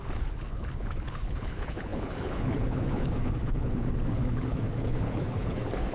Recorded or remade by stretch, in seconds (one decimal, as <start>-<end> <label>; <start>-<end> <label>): 0.0-5.9 remade